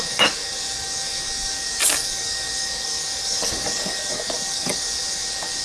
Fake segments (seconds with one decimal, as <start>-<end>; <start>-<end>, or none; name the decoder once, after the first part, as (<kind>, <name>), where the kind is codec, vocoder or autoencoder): 0.0-5.6 (codec, DAC)